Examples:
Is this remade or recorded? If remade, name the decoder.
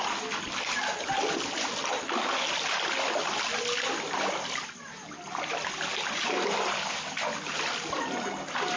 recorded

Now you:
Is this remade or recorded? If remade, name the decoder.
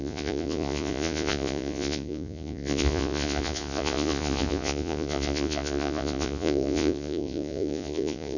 remade, vocoder, Vocos